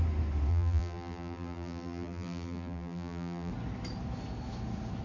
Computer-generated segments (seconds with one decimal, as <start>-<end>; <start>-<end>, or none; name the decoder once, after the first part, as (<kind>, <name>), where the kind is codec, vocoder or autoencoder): 0.5-3.5 (vocoder, BigVGAN v2)